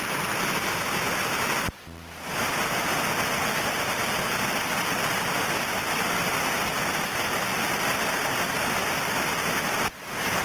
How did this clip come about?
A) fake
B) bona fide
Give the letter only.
B